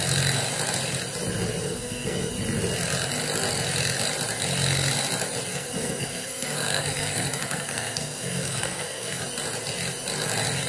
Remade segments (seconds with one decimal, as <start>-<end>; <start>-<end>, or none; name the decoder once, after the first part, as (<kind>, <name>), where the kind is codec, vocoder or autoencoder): 1.6-2.3 (codec, SNAC); 5.5-9.2